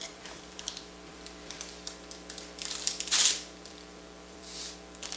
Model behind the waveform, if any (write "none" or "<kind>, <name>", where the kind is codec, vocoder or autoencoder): vocoder, BigVGAN v2